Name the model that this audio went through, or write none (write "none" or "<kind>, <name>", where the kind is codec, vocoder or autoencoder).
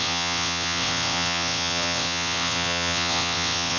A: vocoder, WaveNeXt